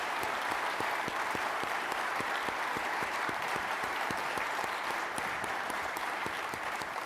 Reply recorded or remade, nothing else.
remade